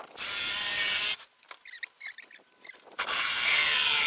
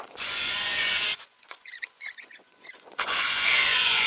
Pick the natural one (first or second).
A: first